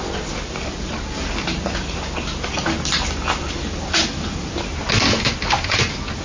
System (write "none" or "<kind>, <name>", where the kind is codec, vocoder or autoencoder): none